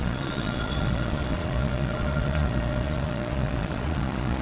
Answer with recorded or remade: remade